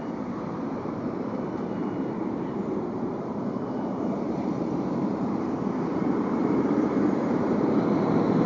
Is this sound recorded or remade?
remade